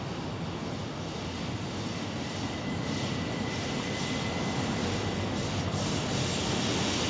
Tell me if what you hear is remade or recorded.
recorded